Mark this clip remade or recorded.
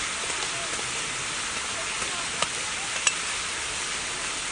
recorded